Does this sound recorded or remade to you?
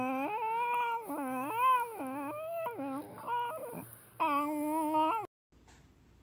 recorded